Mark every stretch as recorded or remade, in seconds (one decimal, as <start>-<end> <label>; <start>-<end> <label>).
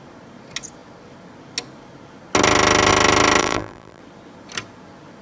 0.0-3.4 recorded; 3.4-4.0 remade; 4.0-5.2 recorded